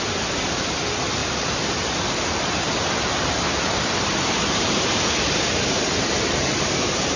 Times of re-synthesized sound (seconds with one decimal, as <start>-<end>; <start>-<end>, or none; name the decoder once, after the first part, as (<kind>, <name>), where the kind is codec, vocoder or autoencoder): 1.2-5.5 (vocoder, BigVGAN v2)